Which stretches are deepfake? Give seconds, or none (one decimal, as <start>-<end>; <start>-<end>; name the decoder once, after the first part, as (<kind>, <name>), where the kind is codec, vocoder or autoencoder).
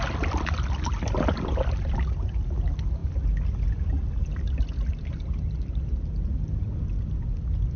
none